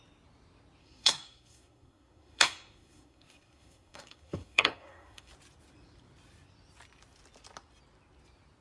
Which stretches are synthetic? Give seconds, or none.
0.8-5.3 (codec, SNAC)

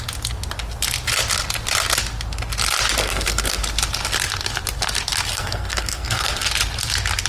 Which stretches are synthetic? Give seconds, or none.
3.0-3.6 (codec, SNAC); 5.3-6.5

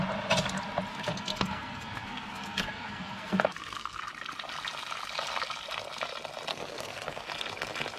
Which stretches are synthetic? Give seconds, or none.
0.9-4.0 (codec, SNAC); 6.5-7.3

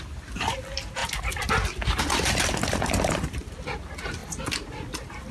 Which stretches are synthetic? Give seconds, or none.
none